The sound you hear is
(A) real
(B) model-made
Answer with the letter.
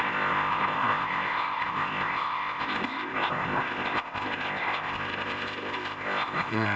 B